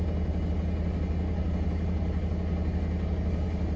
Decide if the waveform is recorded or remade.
recorded